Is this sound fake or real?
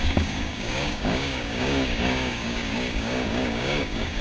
fake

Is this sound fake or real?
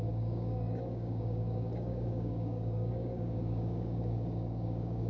fake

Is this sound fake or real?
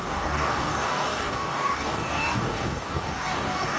fake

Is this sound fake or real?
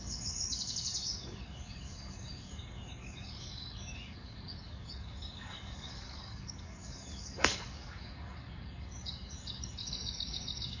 fake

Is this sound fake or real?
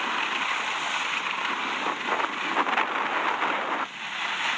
real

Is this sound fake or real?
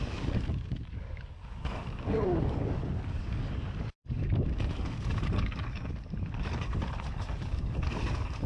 fake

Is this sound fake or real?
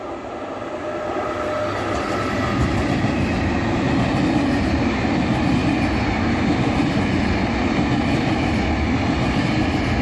real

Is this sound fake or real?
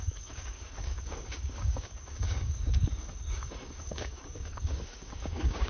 fake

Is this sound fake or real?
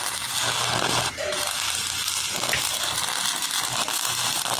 real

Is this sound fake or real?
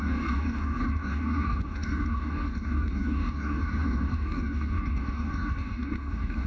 fake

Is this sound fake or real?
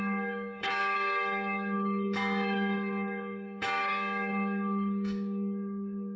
fake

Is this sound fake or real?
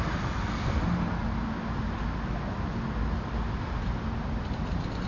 real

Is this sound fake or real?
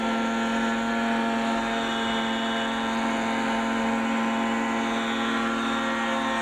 real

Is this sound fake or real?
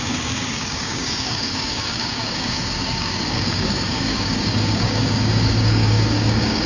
fake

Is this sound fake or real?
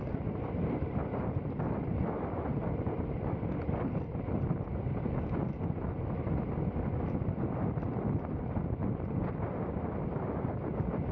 real